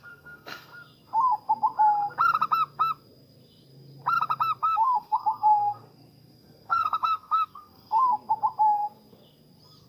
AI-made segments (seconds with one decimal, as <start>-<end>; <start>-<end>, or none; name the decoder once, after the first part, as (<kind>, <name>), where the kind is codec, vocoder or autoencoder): 0.0-0.7 (codec, SNAC); 4.6-8.1